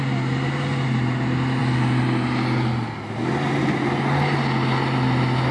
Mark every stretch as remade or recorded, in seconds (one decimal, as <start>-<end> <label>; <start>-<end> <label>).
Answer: 0.0-5.5 recorded